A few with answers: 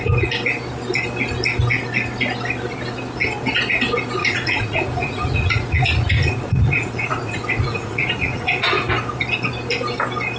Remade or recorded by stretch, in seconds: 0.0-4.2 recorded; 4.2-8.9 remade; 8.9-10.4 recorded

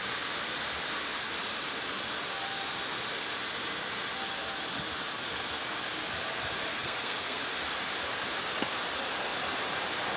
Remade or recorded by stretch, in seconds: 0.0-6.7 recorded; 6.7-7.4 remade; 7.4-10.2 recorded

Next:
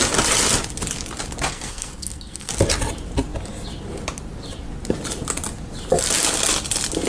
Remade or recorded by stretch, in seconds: 0.0-1.5 recorded; 1.5-2.5 remade; 2.5-7.1 recorded

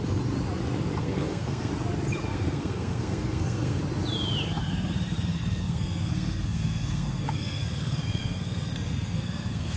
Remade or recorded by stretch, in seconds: 0.0-1.0 recorded; 1.0-1.7 remade; 1.7-2.3 recorded; 2.3-3.8 remade; 3.8-5.3 recorded; 5.3-9.8 remade

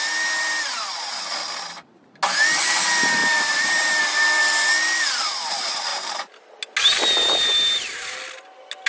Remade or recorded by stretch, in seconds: 0.0-3.2 recorded; 3.2-4.0 remade; 4.0-5.9 recorded; 5.9-6.4 remade; 6.4-8.9 recorded

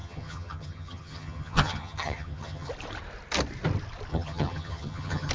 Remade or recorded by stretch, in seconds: 0.0-2.7 remade; 2.7-4.1 recorded; 4.1-5.3 remade

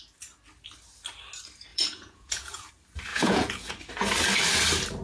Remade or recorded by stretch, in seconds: 0.0-1.7 recorded; 1.7-2.7 remade; 2.7-3.1 recorded; 3.1-3.7 remade; 3.7-5.0 recorded